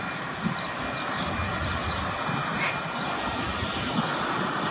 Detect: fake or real real